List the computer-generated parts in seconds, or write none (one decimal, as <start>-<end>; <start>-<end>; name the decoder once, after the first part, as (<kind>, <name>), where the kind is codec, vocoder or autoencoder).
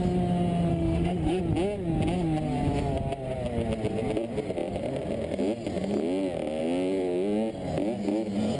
0.7-1.4 (autoencoder, DAC-VAE)